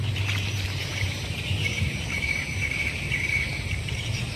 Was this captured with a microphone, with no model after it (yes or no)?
no